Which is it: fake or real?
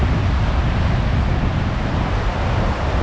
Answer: real